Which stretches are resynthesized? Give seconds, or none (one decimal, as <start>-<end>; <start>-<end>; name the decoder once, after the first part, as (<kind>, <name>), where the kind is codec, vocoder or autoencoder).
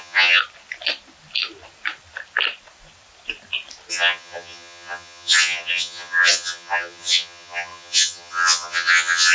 0.0-0.4 (vocoder, HiFi-GAN); 3.9-9.3